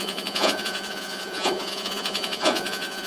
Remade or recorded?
remade